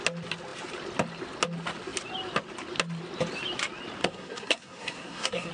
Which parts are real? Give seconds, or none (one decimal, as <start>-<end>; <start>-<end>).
0.0-4.0